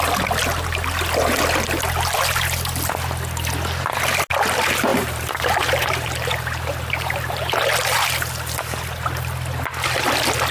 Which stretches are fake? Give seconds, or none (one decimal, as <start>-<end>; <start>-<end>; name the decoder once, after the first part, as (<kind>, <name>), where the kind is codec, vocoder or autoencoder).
4.9-8.1 (vocoder, BigVGAN v2)